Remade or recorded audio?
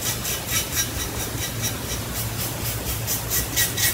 recorded